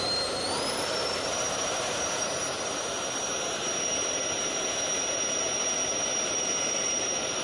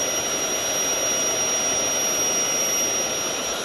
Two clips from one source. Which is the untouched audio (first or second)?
second